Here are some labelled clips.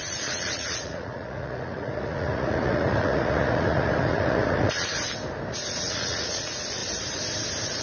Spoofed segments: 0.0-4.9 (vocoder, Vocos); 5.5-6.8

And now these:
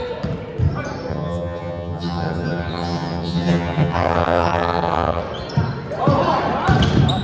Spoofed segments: 1.1-5.2 (vocoder, HiFi-GAN)